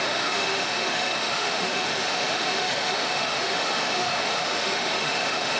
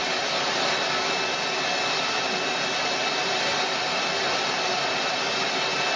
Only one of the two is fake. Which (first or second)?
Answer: first